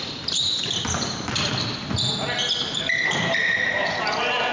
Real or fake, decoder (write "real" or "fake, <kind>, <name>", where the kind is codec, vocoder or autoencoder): real